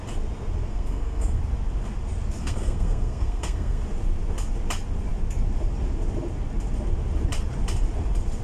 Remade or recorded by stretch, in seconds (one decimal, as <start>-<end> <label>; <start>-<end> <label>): 0.0-0.7 recorded; 0.7-1.4 remade; 1.4-2.4 recorded; 2.4-3.8 remade; 3.8-8.4 recorded